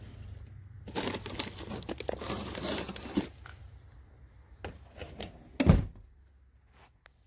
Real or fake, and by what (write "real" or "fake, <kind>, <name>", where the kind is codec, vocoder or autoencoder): real